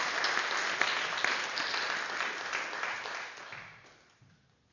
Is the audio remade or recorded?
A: recorded